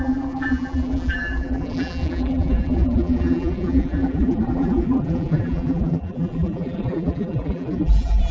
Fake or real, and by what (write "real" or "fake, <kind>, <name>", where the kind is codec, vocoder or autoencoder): fake, vocoder, BigVGAN v2